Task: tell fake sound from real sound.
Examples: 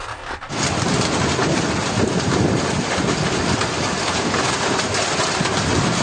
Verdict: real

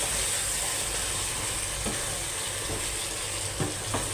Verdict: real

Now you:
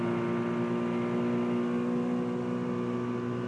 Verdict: real